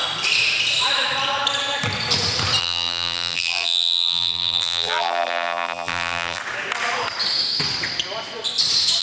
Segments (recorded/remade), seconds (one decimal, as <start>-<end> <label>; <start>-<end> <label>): 0.0-2.6 recorded; 2.6-6.4 remade; 6.4-9.0 recorded